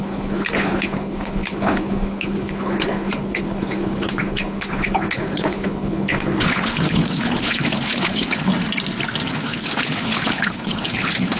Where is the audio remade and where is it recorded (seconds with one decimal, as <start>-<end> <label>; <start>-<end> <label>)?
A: 0.0-8.5 remade; 8.5-9.3 recorded; 9.3-11.4 remade